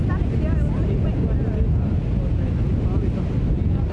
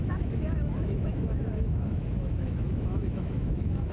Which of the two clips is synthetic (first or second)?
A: second